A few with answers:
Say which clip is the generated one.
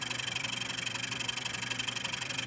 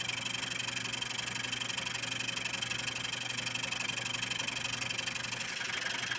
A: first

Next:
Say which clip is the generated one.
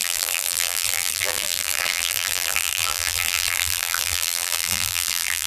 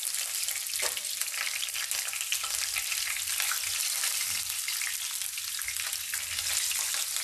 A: first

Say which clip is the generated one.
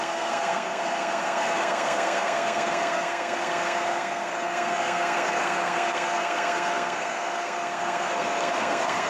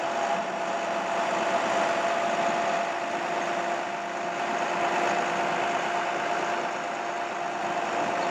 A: first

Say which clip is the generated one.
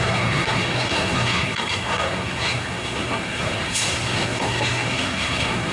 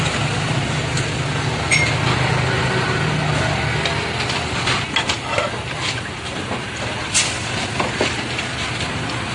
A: first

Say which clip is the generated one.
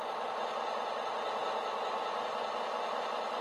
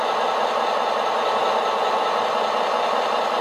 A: second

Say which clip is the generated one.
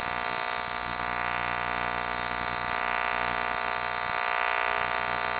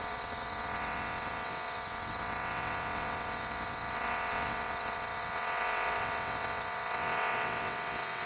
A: second